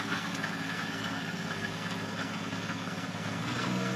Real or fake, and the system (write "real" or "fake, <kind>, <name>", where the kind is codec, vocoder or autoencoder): fake, codec, SNAC